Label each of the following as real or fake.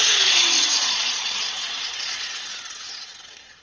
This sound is fake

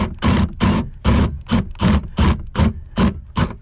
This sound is real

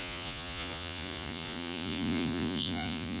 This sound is fake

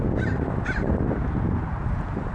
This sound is real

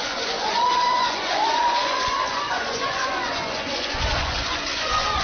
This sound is fake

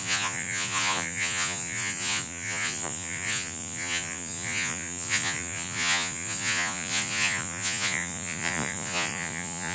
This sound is fake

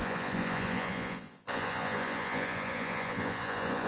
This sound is fake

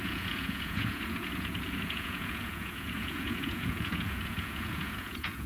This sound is fake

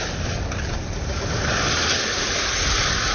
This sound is real